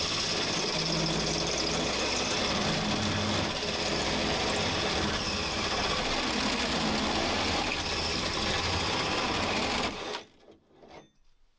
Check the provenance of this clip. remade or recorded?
recorded